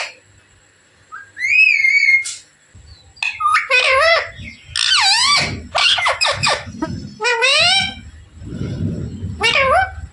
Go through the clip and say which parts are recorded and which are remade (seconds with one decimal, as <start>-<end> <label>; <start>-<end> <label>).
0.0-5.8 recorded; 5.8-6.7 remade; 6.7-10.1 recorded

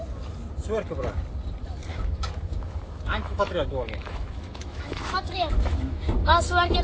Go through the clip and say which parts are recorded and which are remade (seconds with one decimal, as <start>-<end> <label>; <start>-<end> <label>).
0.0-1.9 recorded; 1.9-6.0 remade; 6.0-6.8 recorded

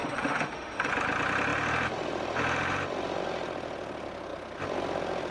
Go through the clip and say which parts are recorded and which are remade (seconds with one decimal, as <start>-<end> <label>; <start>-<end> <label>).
0.0-0.9 remade; 0.9-5.3 recorded

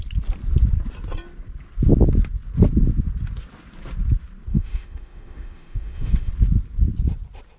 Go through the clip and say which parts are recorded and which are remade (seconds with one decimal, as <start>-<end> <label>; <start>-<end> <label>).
0.0-4.5 recorded; 4.5-6.3 remade; 6.3-7.6 recorded

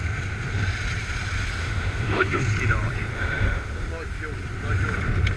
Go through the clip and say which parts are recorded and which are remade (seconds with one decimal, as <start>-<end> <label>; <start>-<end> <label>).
0.0-1.6 recorded; 1.6-2.4 remade; 2.4-3.1 recorded; 3.1-3.7 remade; 3.7-5.4 recorded